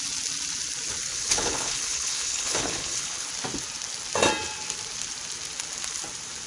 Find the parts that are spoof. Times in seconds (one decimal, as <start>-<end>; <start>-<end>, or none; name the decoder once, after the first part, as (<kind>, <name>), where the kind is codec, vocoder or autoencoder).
1.1-3.3 (codec, HILCodec)